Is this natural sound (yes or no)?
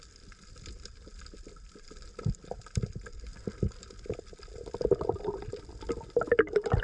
yes